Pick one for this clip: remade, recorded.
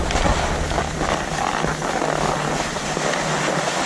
recorded